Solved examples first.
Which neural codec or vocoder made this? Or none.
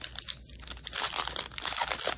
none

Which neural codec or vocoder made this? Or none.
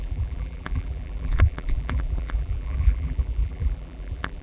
vocoder, BigVGAN v2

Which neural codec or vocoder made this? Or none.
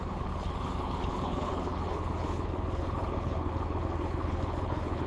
codec, HILCodec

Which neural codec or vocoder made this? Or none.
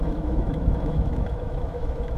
autoencoder, DAC-VAE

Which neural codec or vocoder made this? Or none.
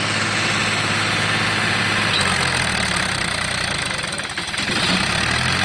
none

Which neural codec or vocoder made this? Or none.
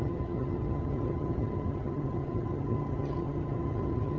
vocoder, HiFi-GAN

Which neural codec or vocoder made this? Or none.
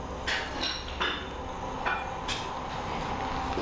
none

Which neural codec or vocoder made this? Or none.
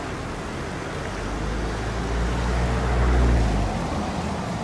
none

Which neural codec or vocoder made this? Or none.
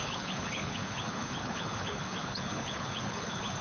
codec, HILCodec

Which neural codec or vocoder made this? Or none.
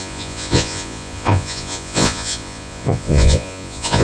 vocoder, Vocos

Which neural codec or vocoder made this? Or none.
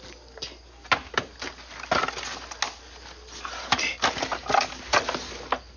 none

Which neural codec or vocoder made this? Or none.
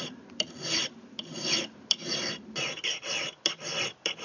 vocoder, BigVGAN v2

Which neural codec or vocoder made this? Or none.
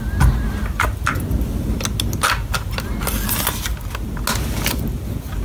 none